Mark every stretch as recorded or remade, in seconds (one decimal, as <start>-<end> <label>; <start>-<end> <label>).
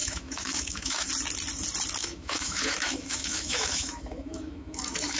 0.0-1.1 remade; 1.1-2.0 recorded; 2.0-5.2 remade